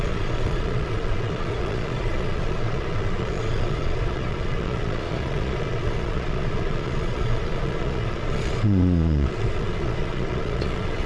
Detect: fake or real fake